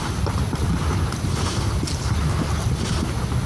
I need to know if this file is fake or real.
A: real